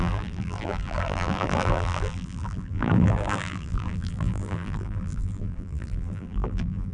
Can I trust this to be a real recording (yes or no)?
no